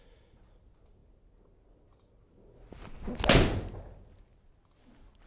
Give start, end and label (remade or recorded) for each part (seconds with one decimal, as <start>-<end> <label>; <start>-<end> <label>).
0.0-5.3 recorded